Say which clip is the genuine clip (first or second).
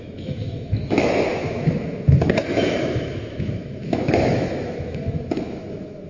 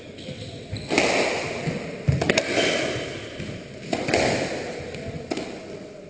second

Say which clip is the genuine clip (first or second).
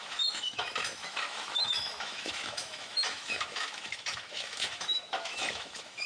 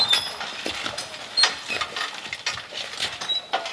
second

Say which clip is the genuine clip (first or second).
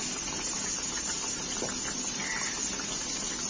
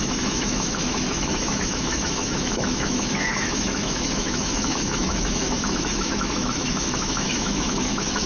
first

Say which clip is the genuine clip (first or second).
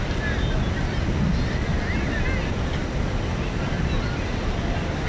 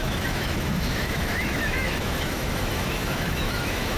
first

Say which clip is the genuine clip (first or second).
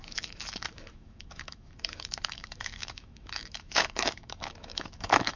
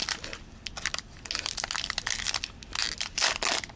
second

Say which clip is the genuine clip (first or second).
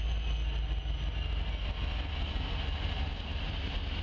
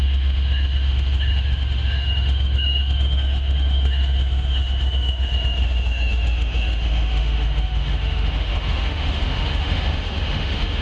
first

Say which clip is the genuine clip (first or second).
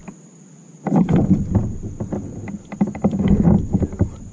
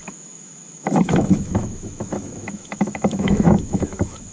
first